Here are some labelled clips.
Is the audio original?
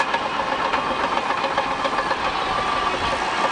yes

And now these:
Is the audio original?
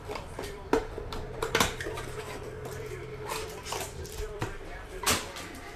no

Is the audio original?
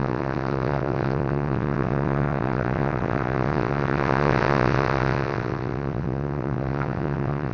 no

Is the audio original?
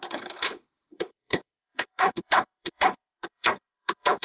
no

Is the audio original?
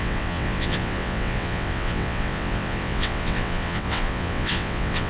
no